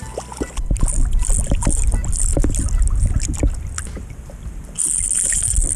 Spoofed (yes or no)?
no